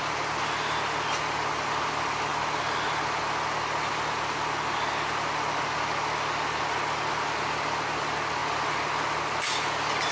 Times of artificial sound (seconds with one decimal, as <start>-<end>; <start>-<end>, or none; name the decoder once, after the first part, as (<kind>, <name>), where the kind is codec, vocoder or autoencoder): none